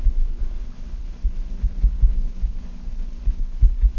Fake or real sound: fake